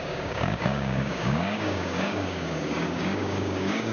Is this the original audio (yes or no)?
no